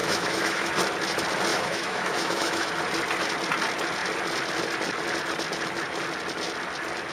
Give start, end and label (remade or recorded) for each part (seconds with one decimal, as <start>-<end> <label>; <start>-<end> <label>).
0.0-0.7 remade; 0.7-1.5 recorded; 1.5-2.7 remade; 2.7-7.1 recorded